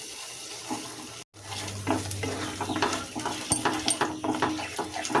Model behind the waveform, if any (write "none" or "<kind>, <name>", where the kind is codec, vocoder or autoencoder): none